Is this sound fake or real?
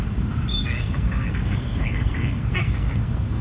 fake